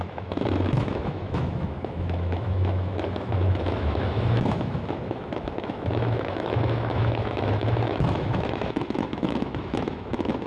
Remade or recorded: remade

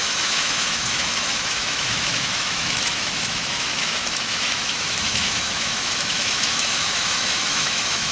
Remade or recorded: remade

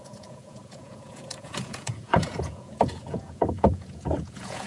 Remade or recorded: remade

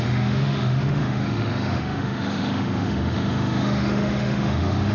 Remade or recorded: remade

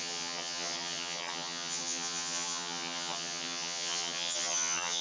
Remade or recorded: remade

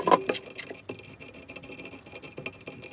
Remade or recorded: recorded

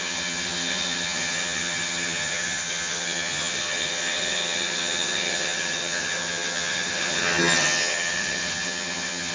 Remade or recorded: remade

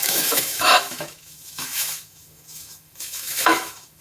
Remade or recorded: remade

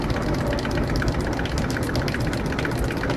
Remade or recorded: recorded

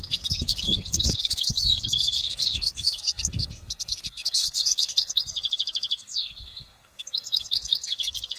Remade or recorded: remade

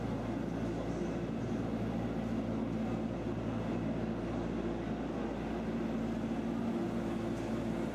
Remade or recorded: recorded